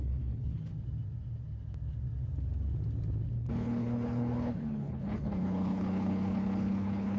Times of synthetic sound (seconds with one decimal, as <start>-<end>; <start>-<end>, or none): 0.0-0.7; 3.5-7.2